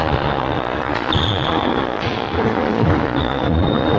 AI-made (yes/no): yes